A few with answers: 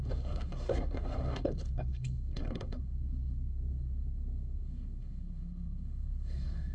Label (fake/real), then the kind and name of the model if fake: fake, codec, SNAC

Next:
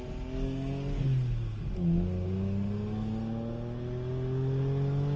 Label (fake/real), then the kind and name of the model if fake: real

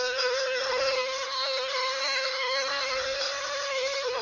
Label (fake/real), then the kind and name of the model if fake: fake, codec, SNAC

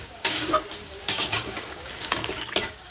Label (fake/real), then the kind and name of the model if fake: fake, codec, DAC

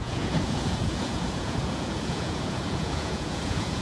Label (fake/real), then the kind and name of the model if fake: fake, vocoder, Vocos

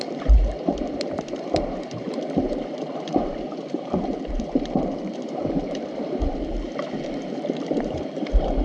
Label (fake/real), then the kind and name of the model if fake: fake, vocoder, BigVGAN v2